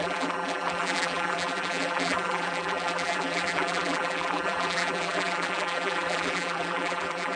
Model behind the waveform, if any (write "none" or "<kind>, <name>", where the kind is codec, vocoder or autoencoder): vocoder, BigVGAN v2